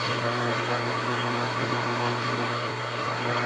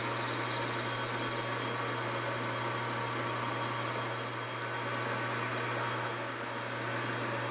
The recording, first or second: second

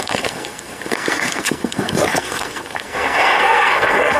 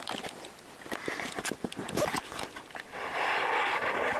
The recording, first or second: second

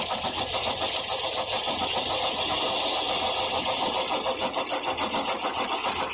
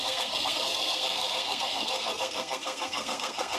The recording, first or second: first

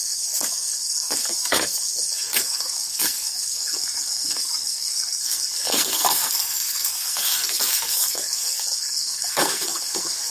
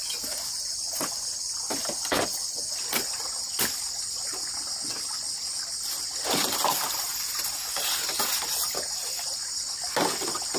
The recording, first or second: second